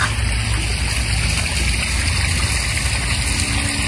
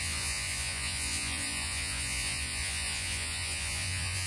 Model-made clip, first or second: second